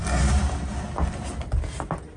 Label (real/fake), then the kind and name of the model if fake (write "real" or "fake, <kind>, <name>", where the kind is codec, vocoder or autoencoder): real